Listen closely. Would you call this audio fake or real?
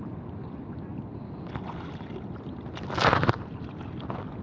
real